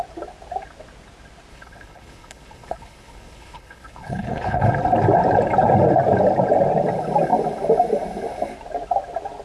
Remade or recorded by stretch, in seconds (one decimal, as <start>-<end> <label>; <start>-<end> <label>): 0.0-1.5 recorded; 1.5-4.7 remade; 4.7-9.4 recorded

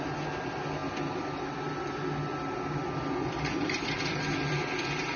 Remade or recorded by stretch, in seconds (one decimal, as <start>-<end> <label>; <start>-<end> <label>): 0.0-5.2 recorded

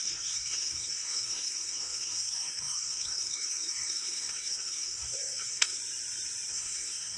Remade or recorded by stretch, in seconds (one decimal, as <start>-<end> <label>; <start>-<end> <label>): 0.0-5.8 remade; 5.8-6.5 recorded; 6.5-7.2 remade

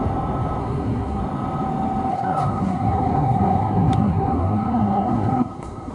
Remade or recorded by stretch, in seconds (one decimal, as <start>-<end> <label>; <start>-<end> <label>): 0.0-0.6 recorded; 0.6-1.2 remade; 1.2-2.1 recorded; 2.1-5.9 remade

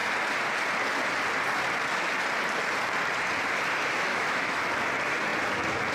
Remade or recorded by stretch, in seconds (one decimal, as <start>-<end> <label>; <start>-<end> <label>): 0.0-4.1 recorded; 4.1-4.6 remade; 4.6-5.9 recorded